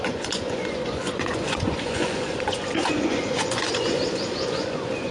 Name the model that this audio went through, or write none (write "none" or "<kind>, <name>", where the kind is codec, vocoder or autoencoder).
vocoder, Vocos